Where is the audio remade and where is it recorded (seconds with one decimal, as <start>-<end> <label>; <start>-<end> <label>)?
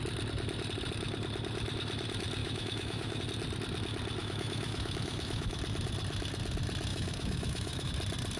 0.0-2.4 recorded; 2.4-3.2 remade; 3.2-4.2 recorded; 4.2-5.6 remade; 5.6-6.9 recorded; 6.9-7.9 remade; 7.9-8.4 recorded